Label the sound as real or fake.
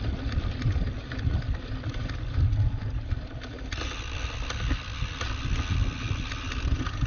real